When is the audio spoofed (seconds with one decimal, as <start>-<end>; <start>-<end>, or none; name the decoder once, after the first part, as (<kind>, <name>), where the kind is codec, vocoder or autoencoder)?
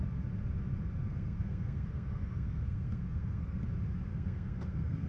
1.0-3.6 (codec, SNAC); 4.1-5.1